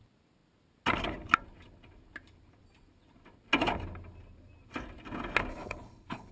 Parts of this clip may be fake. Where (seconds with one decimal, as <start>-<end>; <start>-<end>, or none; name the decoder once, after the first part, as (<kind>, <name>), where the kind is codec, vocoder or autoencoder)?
5.5-6.3 (codec, HILCodec)

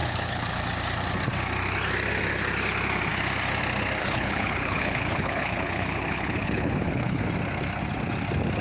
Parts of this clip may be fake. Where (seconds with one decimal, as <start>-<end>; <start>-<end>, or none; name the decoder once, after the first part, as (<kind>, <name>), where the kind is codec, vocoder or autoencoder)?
0.0-0.6 (codec, HILCodec); 4.0-7.2

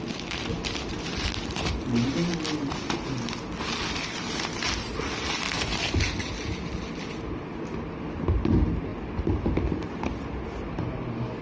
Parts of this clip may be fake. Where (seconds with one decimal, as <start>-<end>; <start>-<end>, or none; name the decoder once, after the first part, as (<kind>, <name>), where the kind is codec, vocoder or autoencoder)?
none